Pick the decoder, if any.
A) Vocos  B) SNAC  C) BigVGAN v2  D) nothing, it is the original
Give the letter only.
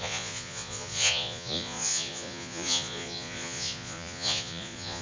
A